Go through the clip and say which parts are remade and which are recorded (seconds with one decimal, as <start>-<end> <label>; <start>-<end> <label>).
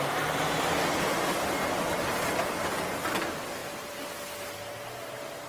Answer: 0.0-5.5 recorded